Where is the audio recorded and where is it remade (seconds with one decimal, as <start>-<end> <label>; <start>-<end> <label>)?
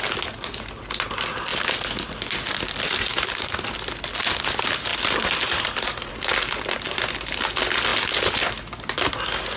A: 0.0-9.6 recorded